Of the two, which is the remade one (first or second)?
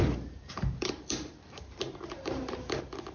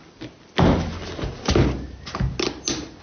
first